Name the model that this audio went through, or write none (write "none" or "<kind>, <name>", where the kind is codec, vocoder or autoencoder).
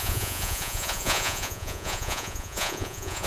vocoder, Vocos